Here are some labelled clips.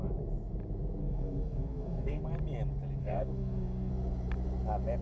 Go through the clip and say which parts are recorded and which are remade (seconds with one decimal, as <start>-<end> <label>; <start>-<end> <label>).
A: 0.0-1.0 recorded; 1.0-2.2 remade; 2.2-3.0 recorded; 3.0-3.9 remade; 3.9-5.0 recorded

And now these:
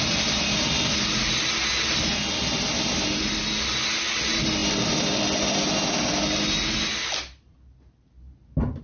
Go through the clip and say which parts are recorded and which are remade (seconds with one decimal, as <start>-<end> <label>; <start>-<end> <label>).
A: 0.0-8.8 recorded

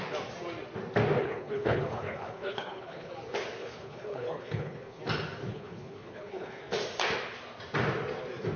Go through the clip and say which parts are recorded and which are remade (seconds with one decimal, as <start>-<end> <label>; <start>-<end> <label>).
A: 0.0-1.2 recorded; 1.2-3.1 remade; 3.1-3.6 recorded; 3.6-5.0 remade; 5.0-5.5 recorded; 5.5-6.6 remade; 6.6-8.6 recorded